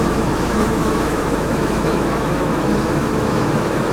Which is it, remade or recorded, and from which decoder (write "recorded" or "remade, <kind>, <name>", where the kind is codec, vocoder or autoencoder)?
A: remade, autoencoder, DAC-VAE